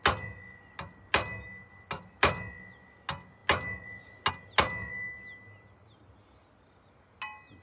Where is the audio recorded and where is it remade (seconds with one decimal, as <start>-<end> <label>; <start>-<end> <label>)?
0.0-7.6 recorded